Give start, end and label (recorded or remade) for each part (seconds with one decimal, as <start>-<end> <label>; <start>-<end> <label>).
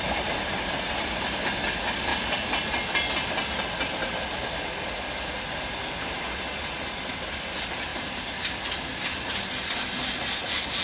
0.0-10.8 recorded